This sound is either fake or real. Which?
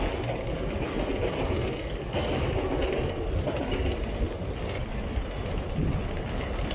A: real